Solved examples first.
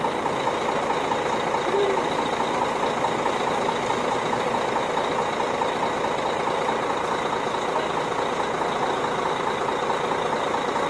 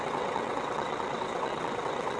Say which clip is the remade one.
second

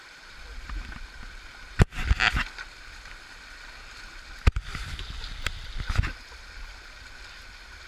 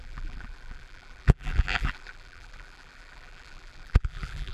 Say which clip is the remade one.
second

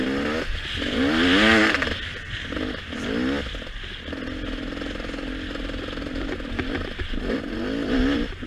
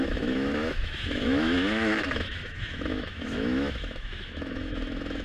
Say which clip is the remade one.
second